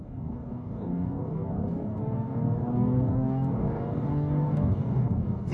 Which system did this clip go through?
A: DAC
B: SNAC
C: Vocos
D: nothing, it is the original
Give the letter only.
A